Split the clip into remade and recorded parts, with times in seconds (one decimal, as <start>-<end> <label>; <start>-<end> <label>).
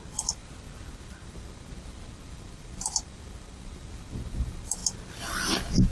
0.0-5.9 recorded